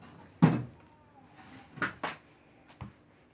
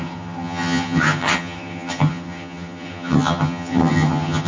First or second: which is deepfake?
second